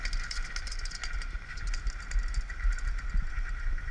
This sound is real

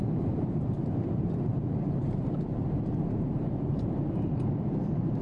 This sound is fake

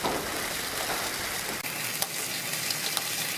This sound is real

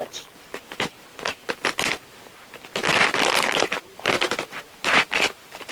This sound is fake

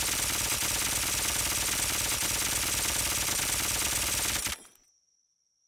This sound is real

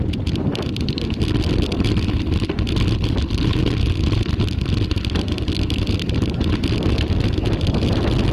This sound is real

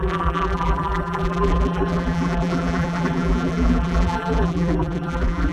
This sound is fake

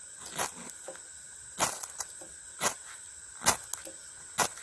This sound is real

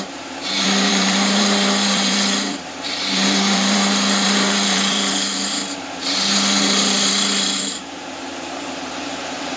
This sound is fake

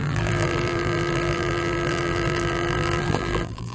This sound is fake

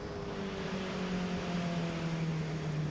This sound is real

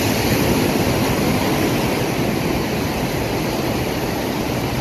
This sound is real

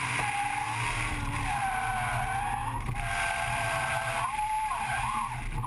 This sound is real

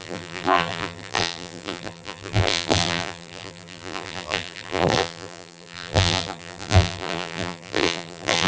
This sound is fake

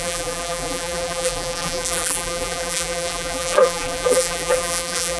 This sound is fake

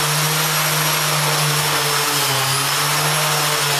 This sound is real